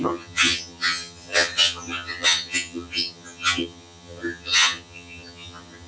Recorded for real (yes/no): no